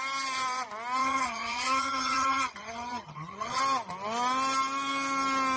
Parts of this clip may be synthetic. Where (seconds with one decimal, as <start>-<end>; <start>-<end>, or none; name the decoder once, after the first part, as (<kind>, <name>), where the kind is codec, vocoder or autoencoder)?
1.0-3.6 (vocoder, HiFi-GAN)